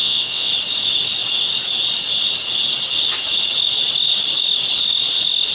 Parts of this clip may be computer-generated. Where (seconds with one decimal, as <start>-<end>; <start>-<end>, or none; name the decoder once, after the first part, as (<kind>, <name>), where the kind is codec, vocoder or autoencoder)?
0.0-0.5 (vocoder, WaveNeXt)